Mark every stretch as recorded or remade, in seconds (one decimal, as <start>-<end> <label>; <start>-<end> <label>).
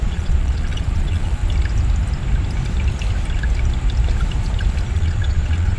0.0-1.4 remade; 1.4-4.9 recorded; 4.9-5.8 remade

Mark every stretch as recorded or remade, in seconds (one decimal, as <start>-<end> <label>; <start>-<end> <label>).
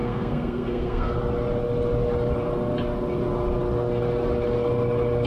0.0-1.1 remade; 1.1-5.3 recorded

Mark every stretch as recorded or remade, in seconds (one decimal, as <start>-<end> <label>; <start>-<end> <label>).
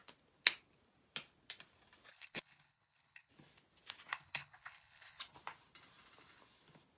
0.0-2.1 recorded; 2.1-3.3 remade; 3.3-4.1 recorded; 4.1-5.2 remade; 5.2-7.0 recorded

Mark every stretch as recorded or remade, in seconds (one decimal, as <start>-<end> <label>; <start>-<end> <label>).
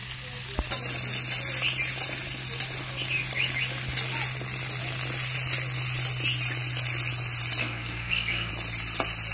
0.0-7.6 recorded; 7.6-8.5 remade; 8.5-9.3 recorded